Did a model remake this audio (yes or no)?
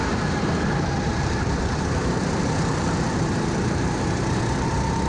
yes